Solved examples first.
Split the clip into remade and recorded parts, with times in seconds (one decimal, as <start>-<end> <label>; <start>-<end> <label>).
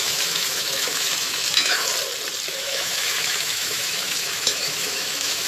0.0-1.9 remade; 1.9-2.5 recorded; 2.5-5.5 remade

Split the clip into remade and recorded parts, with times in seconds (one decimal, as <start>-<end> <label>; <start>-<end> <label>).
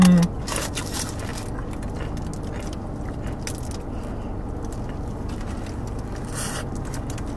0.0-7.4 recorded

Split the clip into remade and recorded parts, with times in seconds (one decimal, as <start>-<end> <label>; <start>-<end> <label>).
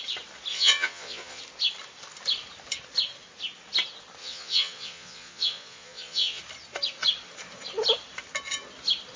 0.0-0.5 recorded; 0.5-1.4 remade; 1.4-4.2 recorded; 4.2-6.4 remade; 6.4-9.2 recorded